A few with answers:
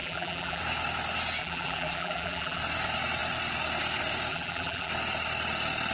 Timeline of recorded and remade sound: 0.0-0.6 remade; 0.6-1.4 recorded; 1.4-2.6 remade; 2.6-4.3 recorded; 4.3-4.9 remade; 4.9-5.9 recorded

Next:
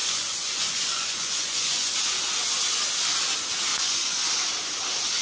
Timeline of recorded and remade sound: 0.0-1.9 remade; 1.9-3.7 recorded; 3.7-4.2 remade; 4.2-5.2 recorded